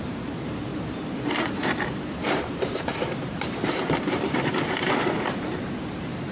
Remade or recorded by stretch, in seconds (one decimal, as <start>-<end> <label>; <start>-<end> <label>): 0.0-6.3 remade